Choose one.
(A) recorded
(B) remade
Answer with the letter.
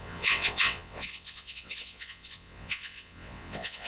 B